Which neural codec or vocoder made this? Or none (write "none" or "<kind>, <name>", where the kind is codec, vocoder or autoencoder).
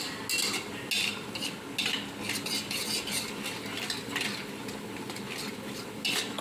none